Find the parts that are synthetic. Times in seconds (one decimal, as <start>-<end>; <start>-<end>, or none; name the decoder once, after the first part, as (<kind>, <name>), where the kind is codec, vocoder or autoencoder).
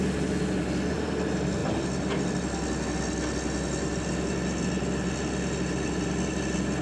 none